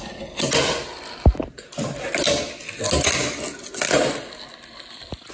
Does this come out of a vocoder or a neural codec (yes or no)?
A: no